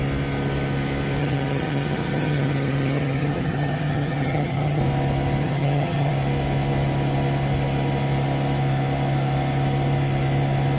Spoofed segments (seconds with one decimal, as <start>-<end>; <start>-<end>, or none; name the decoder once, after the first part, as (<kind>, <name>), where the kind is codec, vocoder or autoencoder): 1.2-4.8 (vocoder, HiFi-GAN); 5.4-6.1